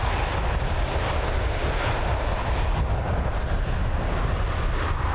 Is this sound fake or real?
real